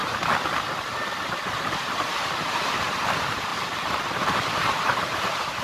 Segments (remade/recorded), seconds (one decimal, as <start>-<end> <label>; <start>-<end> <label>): 0.0-1.5 recorded; 1.5-3.5 remade; 3.5-4.0 recorded; 4.0-5.6 remade